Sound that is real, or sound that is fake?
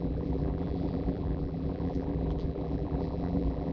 fake